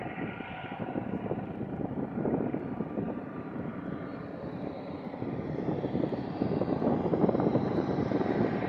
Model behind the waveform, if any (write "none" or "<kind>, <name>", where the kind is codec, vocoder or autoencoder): vocoder, BigVGAN v2